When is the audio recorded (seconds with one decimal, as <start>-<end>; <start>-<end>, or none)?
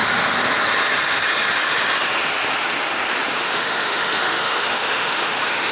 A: 0.0-3.4